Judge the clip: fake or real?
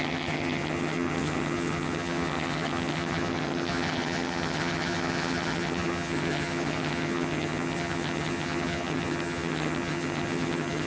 fake